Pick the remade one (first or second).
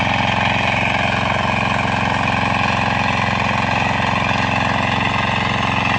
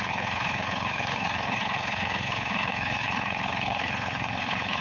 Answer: second